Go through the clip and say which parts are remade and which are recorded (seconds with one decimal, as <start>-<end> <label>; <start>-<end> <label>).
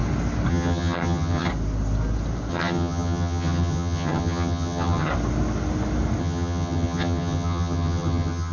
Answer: 0.0-0.5 recorded; 0.5-1.5 remade; 1.5-2.5 recorded; 2.5-5.1 remade; 5.1-6.2 recorded; 6.2-8.5 remade